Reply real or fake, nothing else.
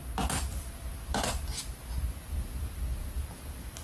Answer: real